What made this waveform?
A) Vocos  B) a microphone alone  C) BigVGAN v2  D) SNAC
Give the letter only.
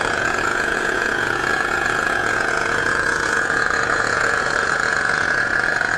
A